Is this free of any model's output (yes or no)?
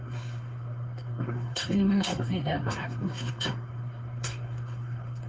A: no